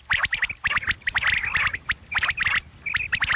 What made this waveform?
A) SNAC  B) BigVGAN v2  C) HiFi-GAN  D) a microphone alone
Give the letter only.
D